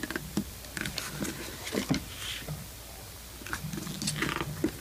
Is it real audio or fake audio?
real